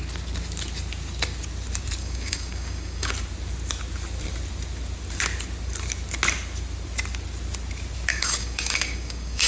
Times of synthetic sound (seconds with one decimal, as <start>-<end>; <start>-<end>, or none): 2.0-3.1; 8.1-9.5

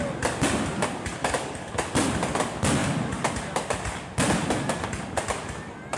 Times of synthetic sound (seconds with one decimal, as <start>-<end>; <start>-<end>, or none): 1.2-1.7